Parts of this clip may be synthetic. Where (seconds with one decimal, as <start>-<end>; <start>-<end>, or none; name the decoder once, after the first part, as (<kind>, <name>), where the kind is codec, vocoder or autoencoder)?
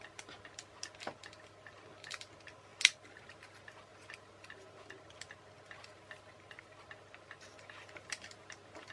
none